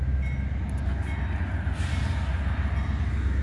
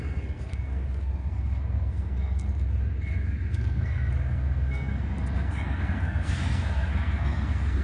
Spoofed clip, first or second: second